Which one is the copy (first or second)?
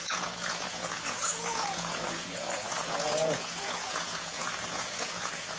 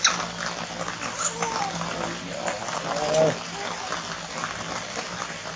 first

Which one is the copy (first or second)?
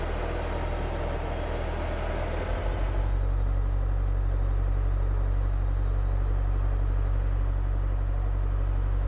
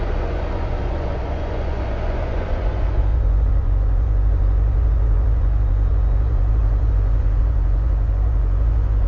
second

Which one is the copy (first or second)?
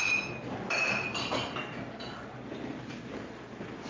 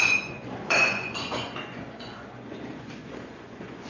second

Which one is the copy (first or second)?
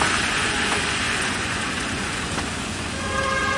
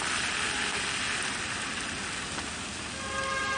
first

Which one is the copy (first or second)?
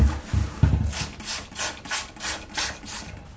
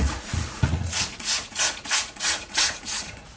second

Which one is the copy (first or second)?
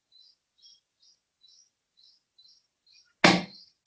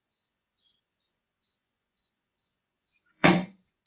second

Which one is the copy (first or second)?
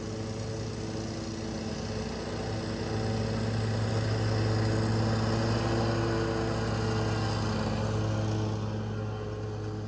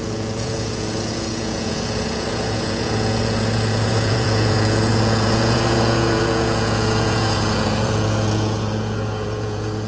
second